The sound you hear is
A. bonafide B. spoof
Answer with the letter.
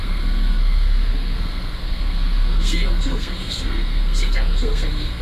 B